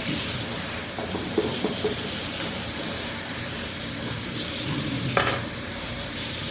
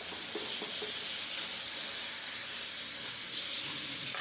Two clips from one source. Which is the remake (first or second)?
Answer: first